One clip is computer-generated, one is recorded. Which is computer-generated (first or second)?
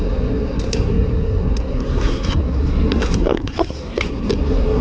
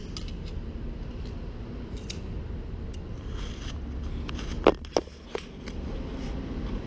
first